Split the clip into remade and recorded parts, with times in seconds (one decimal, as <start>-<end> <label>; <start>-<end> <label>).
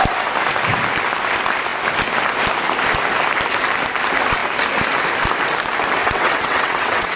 0.0-6.0 recorded; 6.0-7.2 remade